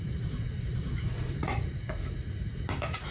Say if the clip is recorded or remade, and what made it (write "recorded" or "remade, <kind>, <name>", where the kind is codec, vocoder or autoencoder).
remade, vocoder, Vocos